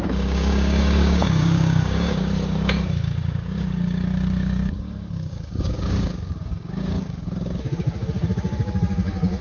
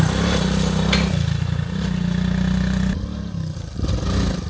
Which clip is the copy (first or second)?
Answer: first